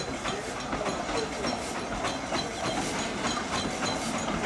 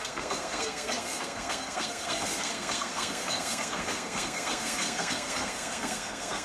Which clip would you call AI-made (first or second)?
second